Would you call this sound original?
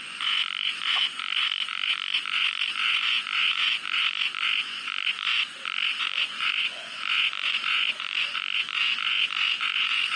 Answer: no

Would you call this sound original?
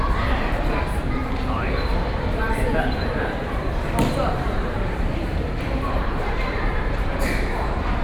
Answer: no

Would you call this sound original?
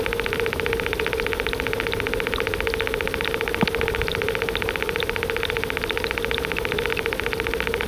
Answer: yes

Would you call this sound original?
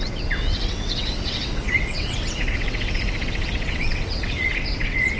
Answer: no